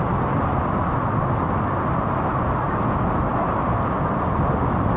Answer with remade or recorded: recorded